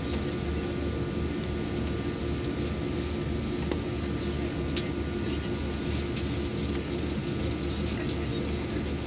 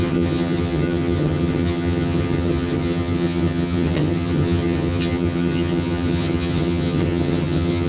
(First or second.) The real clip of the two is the first